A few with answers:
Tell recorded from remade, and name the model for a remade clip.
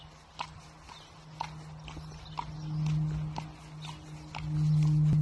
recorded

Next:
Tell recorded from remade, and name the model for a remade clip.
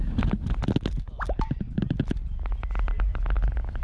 recorded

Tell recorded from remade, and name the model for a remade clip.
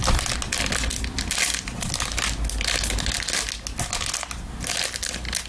recorded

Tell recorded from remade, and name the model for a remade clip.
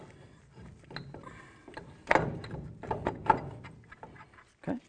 recorded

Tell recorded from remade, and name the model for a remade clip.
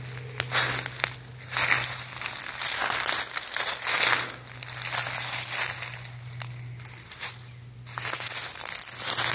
recorded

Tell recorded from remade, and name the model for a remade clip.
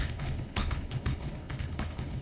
remade, codec, HILCodec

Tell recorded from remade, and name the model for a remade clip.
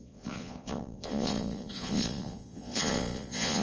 remade, vocoder, Vocos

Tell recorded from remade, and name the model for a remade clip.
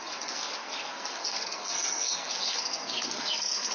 remade, codec, SNAC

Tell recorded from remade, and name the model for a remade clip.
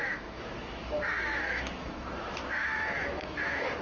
remade, autoencoder, DAC-VAE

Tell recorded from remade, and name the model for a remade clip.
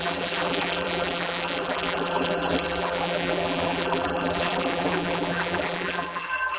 remade, vocoder, BigVGAN v2